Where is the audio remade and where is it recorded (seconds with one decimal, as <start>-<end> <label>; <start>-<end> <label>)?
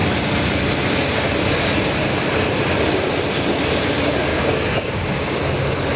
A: 0.0-4.3 recorded; 4.3-5.4 remade; 5.4-6.0 recorded